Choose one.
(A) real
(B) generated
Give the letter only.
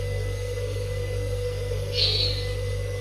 B